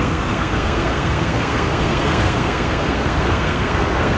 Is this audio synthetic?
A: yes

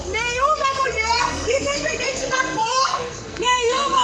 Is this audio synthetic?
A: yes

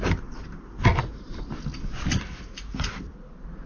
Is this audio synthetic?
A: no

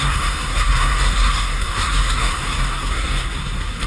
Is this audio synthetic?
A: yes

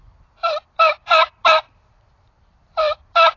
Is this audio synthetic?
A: no